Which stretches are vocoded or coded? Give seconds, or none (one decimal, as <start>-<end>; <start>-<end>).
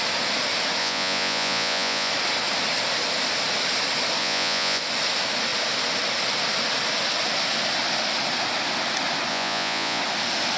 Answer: 0.8-2.1; 4.2-4.8; 9.3-10.0